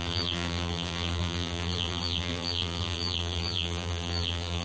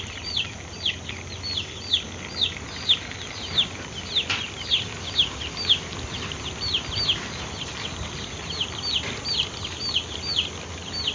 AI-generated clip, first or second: first